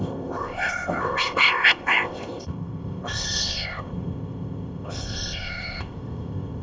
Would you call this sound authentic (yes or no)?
no